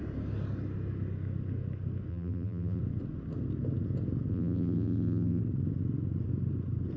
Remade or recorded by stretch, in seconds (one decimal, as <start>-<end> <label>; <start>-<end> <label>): 0.0-2.1 recorded; 2.1-2.8 remade; 2.8-4.3 recorded; 4.3-5.4 remade; 5.4-7.0 recorded